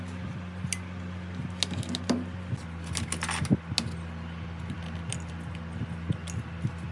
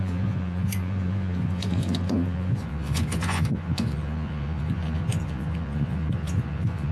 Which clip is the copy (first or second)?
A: second